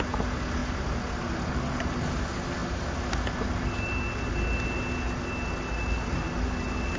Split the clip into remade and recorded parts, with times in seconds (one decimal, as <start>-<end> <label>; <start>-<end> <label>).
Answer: 0.0-7.0 recorded